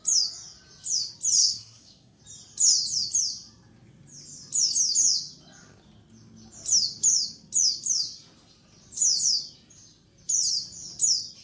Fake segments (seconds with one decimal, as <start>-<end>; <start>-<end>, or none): 1.4-2.2